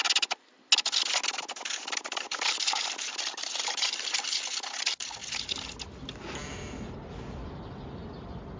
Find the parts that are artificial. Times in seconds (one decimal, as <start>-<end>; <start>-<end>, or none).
none